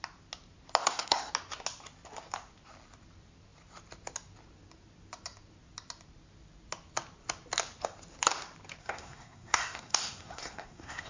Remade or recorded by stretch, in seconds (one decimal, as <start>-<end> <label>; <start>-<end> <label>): 0.0-0.8 recorded; 0.8-1.3 remade; 1.3-8.8 recorded; 8.8-11.1 remade